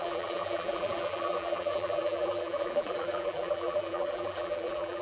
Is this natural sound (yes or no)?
no